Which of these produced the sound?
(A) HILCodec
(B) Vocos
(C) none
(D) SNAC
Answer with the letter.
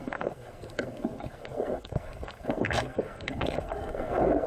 D